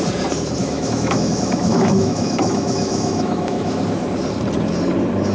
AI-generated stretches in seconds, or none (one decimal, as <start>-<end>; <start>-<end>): 0.6-3.8